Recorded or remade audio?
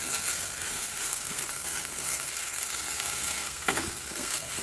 remade